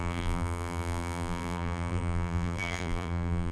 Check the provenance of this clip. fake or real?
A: fake